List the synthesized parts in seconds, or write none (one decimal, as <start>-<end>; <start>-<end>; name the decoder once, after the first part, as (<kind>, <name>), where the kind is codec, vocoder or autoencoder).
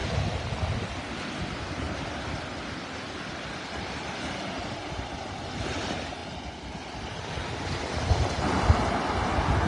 5.3-6.2 (vocoder, BigVGAN v2)